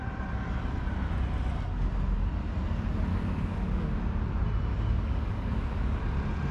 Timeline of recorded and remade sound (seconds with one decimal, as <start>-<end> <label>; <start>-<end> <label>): 0.0-3.1 recorded; 3.1-3.9 remade; 3.9-4.7 recorded; 4.7-6.0 remade; 6.0-6.5 recorded

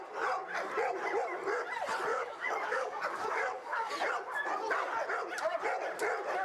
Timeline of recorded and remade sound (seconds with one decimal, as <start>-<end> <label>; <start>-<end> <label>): 0.0-2.1 recorded; 2.1-3.9 remade; 3.9-6.4 recorded

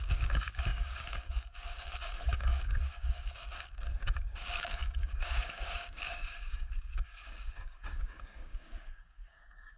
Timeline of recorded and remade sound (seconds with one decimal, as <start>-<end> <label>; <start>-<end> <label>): 0.0-9.8 remade

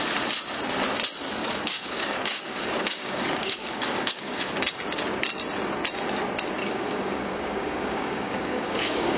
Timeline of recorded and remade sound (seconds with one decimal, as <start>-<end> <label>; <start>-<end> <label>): 0.0-1.4 recorded; 1.4-4.6 remade; 4.6-6.6 recorded; 6.6-9.2 remade

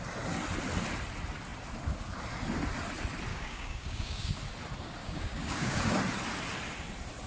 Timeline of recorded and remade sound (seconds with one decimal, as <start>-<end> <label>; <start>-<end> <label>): 0.0-3.3 recorded; 3.3-4.4 remade; 4.4-5.0 recorded; 5.0-5.9 remade; 5.9-7.3 recorded

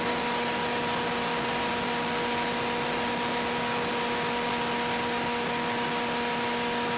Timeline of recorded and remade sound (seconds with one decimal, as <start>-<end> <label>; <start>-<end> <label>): 0.0-7.0 recorded

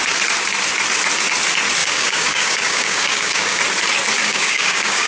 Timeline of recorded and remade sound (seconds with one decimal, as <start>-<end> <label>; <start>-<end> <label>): 0.0-1.8 recorded; 1.8-3.6 remade; 3.6-4.2 recorded; 4.2-5.1 remade

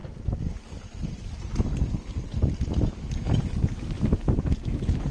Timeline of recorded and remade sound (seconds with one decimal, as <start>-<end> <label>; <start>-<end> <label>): 0.0-2.8 recorded; 2.8-5.1 remade